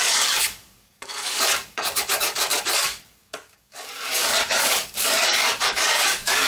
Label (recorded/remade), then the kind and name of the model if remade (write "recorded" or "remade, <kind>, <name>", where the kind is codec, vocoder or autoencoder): remade, codec, DAC